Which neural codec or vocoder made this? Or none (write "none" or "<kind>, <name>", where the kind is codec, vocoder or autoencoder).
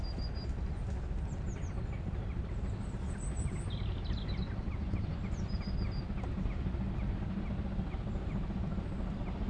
none